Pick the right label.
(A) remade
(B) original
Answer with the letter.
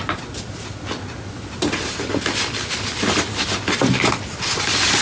B